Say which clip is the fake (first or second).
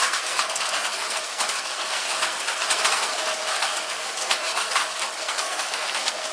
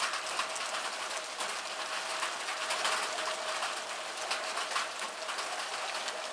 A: first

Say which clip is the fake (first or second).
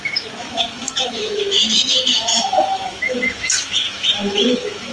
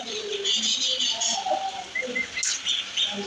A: first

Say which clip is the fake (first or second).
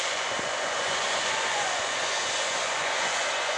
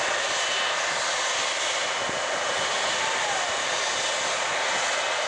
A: first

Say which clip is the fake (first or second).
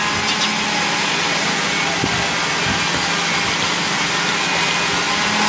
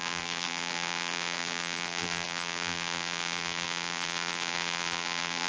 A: second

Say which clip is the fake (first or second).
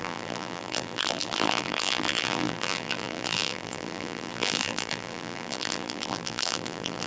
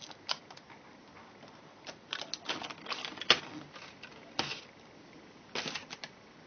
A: first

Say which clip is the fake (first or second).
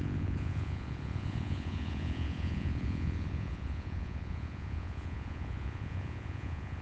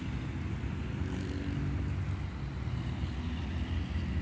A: first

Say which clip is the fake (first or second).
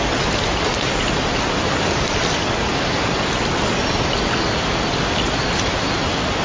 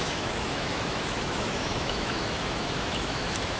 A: second